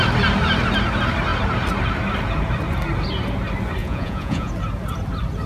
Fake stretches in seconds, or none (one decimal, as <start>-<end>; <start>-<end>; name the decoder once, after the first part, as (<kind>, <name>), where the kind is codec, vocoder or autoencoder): 3.8-4.5 (vocoder, Vocos)